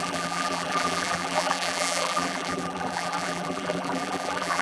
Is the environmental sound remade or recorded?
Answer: remade